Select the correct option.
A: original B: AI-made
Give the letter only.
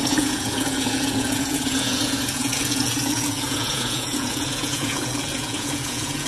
B